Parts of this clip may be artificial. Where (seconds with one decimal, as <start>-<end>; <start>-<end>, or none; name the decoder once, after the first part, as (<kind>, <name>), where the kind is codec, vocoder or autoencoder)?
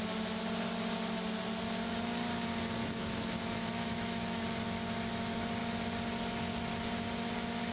2.8-4.4 (autoencoder, DAC-VAE)